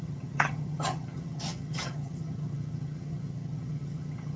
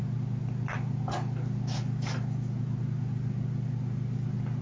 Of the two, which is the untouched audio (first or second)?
second